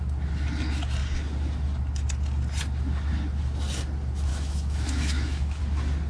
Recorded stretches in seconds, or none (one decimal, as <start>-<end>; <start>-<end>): 0.0-4.3; 5.6-6.1

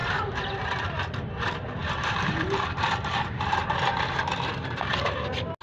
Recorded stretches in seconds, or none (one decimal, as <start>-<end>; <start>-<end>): 3.4-5.6

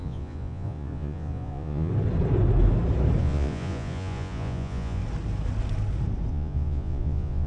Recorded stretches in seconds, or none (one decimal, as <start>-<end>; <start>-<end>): 1.9-3.2; 5.0-6.3

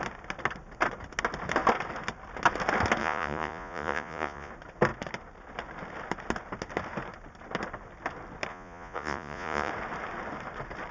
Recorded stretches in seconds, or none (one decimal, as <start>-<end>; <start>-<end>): 0.0-3.0; 4.5-8.5; 9.7-10.9

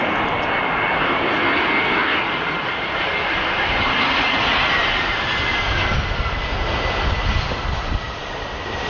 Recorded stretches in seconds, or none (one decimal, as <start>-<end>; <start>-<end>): 0.0-8.9